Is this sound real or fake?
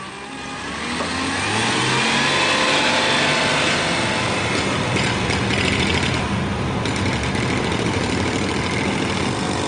real